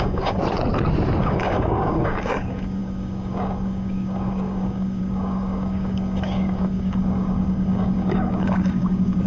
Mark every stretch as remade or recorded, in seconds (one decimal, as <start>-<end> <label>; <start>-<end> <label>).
0.0-0.4 remade; 0.4-1.2 recorded; 1.2-9.3 remade